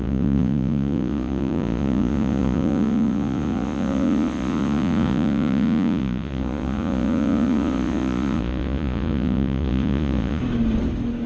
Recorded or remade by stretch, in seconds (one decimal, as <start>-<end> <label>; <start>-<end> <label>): 0.0-10.4 remade; 10.4-11.3 recorded